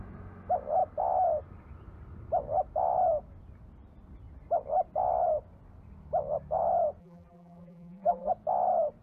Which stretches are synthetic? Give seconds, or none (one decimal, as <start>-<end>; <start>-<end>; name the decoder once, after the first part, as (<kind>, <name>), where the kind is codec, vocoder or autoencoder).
7.0-8.3 (vocoder, BigVGAN v2)